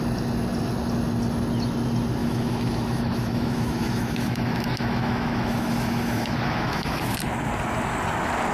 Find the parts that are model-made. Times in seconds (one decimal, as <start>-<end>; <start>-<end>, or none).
2.2-7.2